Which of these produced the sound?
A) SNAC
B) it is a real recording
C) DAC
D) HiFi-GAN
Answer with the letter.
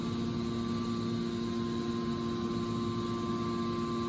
B